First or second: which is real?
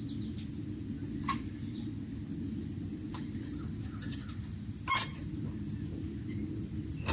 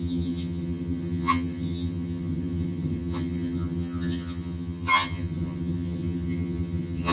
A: first